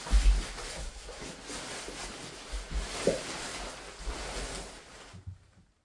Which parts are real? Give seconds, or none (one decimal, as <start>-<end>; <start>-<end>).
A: 0.0-0.7; 1.2-5.8